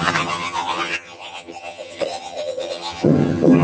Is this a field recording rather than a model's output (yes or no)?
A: no